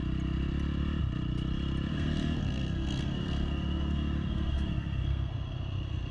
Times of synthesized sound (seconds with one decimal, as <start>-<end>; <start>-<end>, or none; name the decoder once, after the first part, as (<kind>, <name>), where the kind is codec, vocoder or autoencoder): 1.9-5.3 (codec, SNAC)